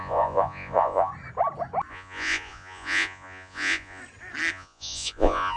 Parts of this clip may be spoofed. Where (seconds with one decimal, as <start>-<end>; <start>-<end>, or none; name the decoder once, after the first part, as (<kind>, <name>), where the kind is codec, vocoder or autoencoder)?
0.0-1.1 (vocoder, Vocos); 1.9-4.0; 4.5-5.6